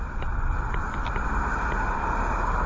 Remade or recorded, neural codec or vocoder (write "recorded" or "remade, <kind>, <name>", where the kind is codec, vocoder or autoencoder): recorded